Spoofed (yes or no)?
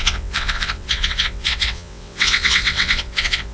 yes